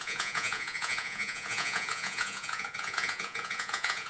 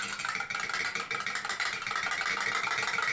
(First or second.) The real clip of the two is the second